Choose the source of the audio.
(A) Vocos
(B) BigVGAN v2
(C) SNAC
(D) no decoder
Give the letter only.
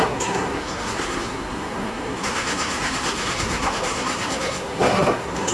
C